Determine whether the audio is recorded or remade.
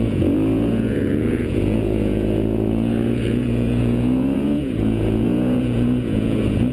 remade